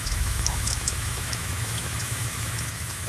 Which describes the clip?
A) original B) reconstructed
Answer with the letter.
B